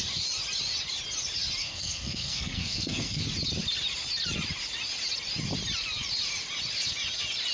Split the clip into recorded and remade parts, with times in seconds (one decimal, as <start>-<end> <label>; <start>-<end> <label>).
0.0-1.6 recorded; 1.6-3.2 remade; 3.2-7.5 recorded